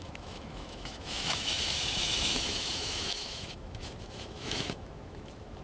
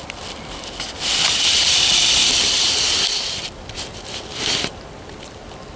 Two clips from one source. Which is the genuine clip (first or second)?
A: second